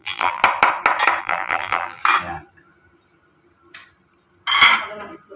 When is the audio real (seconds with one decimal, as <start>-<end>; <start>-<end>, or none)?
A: 0.4-1.2; 2.0-5.4